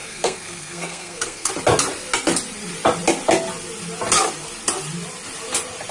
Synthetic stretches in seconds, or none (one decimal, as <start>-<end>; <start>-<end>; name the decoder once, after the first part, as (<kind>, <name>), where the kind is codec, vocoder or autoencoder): 0.0-1.5 (codec, SNAC)